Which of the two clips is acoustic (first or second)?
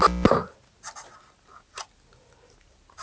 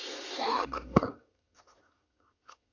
first